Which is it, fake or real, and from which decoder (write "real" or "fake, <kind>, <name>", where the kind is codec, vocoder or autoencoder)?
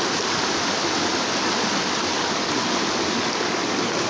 real